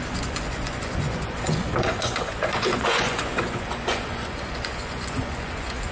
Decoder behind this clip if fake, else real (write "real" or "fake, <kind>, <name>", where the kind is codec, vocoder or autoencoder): fake, vocoder, Vocos